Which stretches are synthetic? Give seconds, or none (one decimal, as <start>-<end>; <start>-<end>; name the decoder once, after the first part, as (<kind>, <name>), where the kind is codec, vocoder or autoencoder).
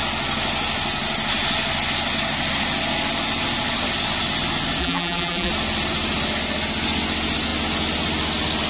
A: 4.8-5.5 (vocoder, BigVGAN v2)